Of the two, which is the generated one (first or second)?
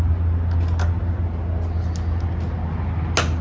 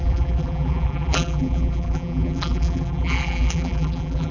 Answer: second